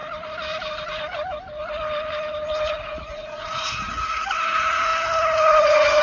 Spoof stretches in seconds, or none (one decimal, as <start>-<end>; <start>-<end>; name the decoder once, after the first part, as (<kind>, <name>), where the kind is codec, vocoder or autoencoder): 2.7-4.9 (vocoder, Vocos); 5.6-6.0